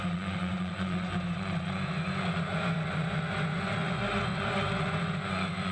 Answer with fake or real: fake